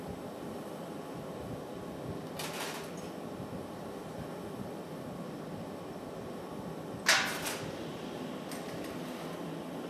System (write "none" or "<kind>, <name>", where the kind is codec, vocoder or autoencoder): none